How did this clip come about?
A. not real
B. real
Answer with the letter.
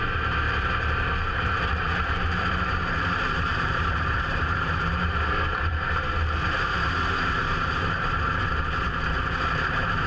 A